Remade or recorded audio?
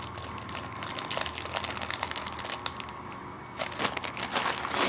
recorded